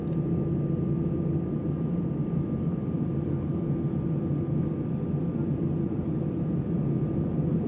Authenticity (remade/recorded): recorded